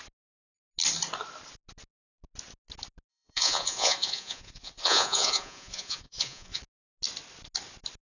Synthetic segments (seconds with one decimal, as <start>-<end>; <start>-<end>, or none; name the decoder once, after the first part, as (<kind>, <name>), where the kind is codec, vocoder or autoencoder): 3.1-6.6 (vocoder, Vocos)